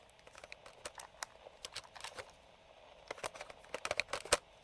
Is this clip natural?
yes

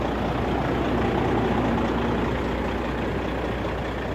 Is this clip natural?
yes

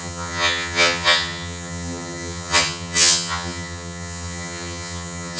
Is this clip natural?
no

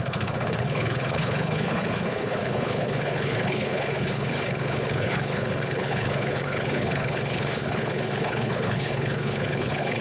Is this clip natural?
no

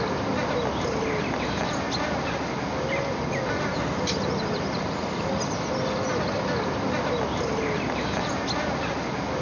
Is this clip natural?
yes